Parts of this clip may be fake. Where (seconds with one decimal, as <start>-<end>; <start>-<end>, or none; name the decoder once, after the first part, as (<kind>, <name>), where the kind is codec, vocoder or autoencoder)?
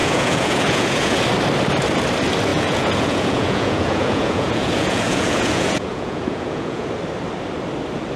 0.0-1.2 (vocoder, Vocos); 2.5-6.9